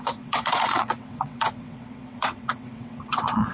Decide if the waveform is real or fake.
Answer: fake